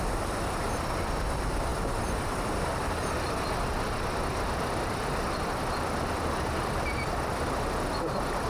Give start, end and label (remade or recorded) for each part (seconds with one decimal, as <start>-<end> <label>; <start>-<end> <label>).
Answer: 0.0-8.5 recorded